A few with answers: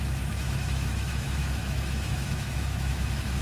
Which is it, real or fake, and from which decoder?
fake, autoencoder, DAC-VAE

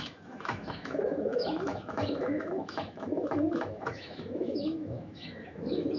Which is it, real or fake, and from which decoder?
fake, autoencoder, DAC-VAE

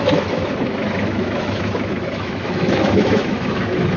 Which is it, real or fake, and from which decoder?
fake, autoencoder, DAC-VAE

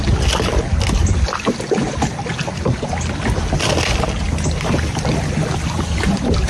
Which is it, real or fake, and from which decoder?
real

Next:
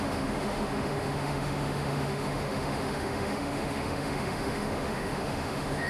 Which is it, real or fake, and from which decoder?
fake, autoencoder, DAC-VAE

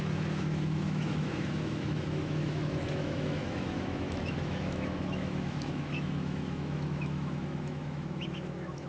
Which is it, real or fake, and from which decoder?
fake, autoencoder, DAC-VAE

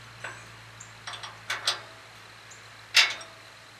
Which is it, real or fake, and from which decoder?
real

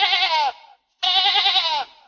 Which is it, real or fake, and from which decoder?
real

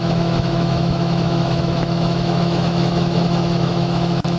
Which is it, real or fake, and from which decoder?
fake, autoencoder, DAC-VAE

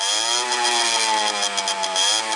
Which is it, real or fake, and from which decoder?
real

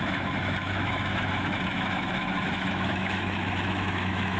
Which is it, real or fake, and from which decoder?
fake, autoencoder, DAC-VAE